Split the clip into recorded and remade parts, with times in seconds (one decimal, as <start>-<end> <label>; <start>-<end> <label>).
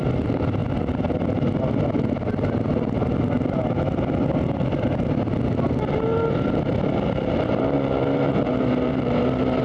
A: 0.0-6.7 recorded; 6.7-9.6 remade